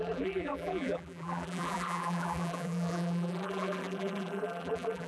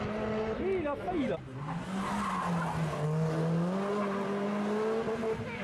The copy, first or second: first